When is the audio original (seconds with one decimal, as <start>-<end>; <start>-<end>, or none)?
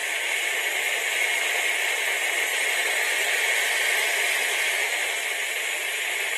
0.0-6.4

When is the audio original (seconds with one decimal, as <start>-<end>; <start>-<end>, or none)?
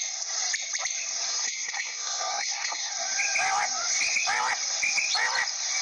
0.0-1.3; 2.9-5.8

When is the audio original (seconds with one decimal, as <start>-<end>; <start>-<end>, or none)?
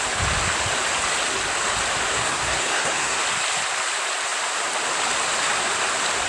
0.0-2.1; 3.2-6.3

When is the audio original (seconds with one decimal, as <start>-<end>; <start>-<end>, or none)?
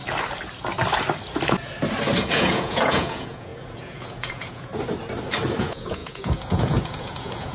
0.0-2.2; 4.7-5.6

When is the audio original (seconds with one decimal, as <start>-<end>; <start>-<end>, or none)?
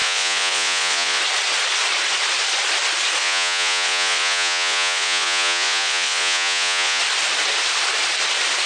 1.2-3.2; 7.0-8.7